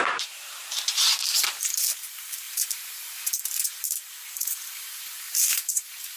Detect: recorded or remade remade